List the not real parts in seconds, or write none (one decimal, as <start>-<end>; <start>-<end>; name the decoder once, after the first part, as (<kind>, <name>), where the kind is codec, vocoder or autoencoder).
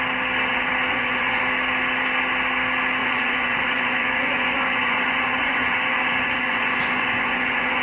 0.9-1.4 (vocoder, Vocos); 3.0-7.8